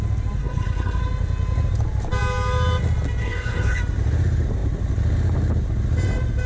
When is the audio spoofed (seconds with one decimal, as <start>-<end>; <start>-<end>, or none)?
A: 0.4-1.0; 3.2-3.8

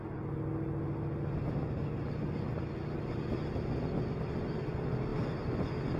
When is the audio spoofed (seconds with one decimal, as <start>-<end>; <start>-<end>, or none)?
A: none